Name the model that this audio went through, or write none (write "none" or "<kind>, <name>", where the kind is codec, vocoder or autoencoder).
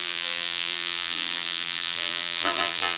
vocoder, BigVGAN v2